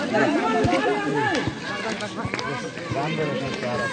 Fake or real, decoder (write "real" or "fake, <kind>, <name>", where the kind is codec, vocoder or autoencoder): real